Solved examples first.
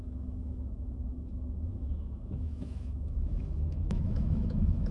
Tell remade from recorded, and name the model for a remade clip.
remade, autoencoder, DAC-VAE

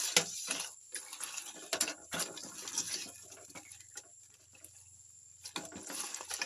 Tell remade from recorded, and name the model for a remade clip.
recorded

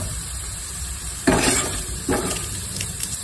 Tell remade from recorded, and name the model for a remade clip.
remade, vocoder, BigVGAN v2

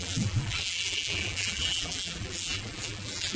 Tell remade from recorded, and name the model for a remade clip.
remade, vocoder, BigVGAN v2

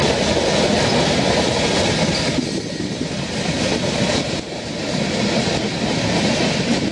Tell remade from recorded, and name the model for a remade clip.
recorded